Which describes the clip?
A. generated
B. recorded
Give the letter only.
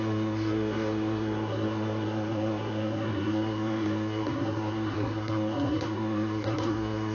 A